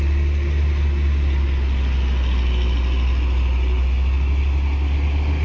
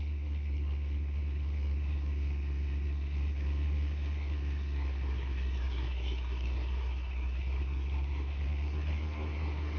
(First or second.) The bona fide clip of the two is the first